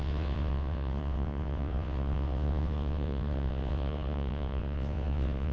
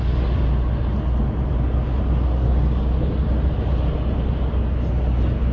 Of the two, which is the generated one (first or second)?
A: first